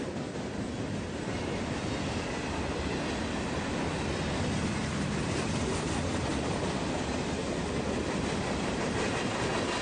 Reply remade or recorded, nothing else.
recorded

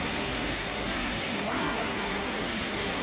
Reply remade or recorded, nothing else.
remade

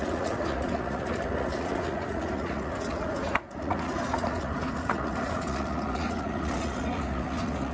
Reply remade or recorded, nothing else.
remade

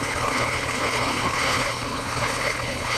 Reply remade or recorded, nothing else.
remade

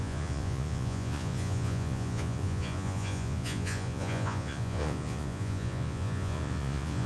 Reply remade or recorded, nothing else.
remade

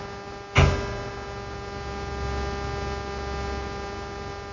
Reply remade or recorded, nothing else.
recorded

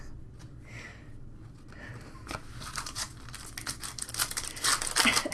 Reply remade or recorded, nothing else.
recorded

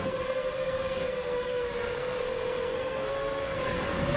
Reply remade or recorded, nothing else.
remade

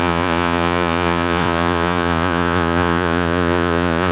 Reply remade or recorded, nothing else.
remade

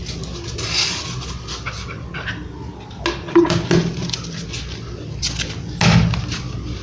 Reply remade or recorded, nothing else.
recorded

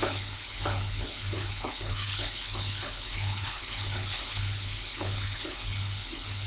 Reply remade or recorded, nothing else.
remade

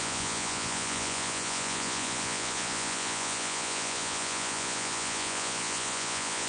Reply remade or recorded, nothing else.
remade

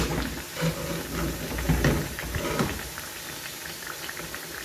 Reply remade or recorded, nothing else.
recorded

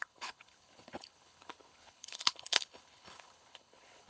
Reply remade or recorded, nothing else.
remade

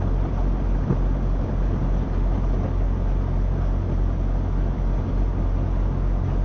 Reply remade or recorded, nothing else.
recorded